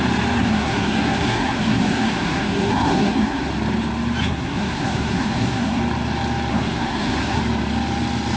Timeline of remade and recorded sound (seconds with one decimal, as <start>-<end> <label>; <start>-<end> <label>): 0.0-0.4 recorded; 0.4-3.5 remade; 3.5-4.2 recorded; 4.2-5.8 remade; 5.8-6.5 recorded; 6.5-7.4 remade; 7.4-8.4 recorded